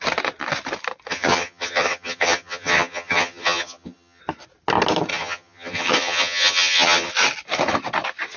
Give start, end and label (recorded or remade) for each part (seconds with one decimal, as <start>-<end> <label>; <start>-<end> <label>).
0.0-1.1 recorded; 1.1-4.2 remade; 4.2-5.1 recorded; 5.1-7.1 remade; 7.1-8.4 recorded

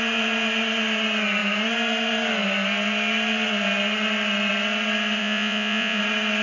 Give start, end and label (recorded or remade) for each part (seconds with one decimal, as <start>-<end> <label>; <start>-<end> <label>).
0.0-5.2 recorded; 5.2-6.0 remade; 6.0-6.4 recorded

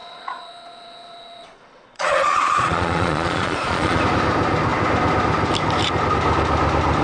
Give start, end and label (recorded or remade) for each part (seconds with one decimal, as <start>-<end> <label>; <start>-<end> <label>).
0.0-4.0 remade; 4.0-7.0 recorded

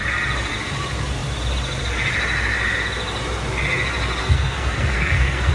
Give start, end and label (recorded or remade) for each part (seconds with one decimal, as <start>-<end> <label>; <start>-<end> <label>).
0.0-4.2 recorded; 4.2-5.5 remade

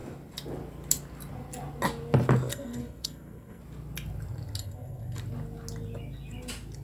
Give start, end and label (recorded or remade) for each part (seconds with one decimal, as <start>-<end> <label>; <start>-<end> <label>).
0.0-2.5 recorded; 2.5-3.6 remade; 3.6-4.6 recorded; 4.6-5.2 remade; 5.2-6.8 recorded